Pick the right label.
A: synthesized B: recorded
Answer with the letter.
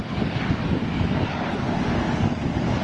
A